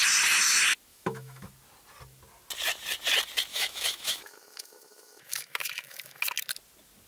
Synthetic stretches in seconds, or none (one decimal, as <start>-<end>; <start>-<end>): 0.9-1.5; 3.5-6.2